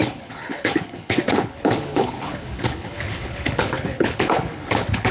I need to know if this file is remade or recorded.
remade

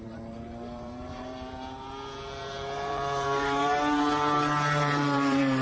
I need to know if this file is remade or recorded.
remade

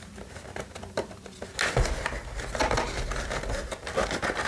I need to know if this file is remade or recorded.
recorded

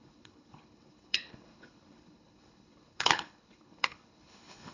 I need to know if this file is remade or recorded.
remade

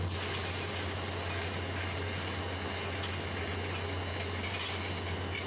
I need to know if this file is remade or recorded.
recorded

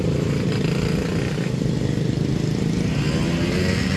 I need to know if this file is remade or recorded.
recorded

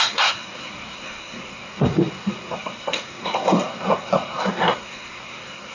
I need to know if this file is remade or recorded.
remade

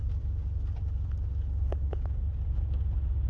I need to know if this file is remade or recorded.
recorded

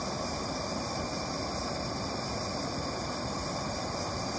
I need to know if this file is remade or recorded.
recorded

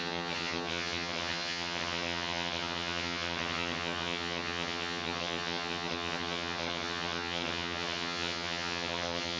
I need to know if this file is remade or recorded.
remade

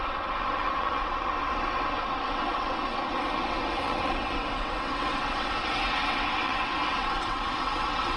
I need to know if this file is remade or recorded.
remade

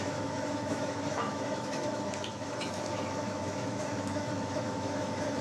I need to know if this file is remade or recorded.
remade